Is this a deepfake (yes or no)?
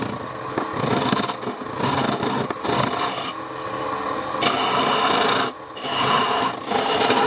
no